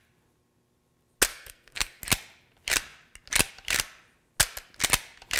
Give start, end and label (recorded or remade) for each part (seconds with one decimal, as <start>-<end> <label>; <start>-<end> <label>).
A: 0.0-1.3 recorded; 1.3-2.0 remade; 2.0-5.4 recorded